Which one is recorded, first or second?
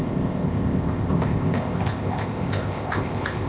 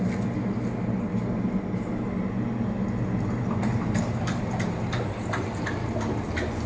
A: second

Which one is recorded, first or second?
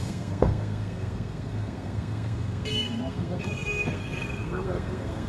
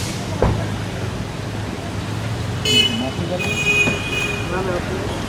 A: second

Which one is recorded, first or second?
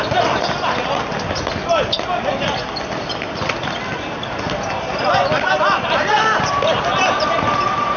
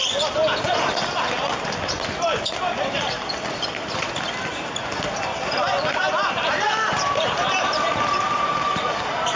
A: first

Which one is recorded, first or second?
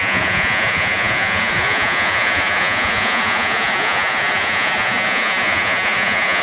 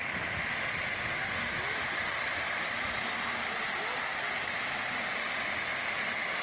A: second